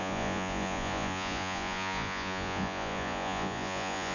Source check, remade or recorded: remade